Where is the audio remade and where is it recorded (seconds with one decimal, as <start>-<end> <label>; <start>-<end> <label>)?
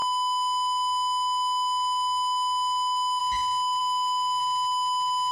0.0-3.2 remade; 3.2-3.8 recorded; 3.8-4.4 remade; 4.4-5.3 recorded